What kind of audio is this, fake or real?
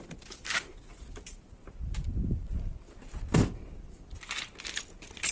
real